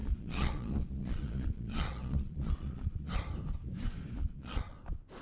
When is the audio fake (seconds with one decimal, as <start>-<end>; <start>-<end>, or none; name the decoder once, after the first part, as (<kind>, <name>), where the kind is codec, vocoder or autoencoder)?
0.0-3.1 (vocoder, Vocos); 4.2-4.8